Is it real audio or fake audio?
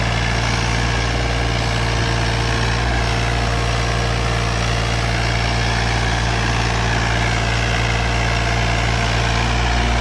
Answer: real